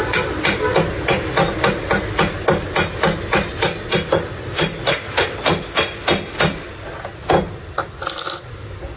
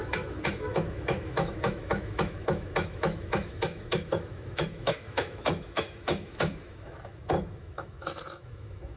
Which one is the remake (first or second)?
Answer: second